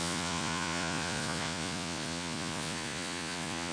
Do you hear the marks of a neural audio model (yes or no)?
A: yes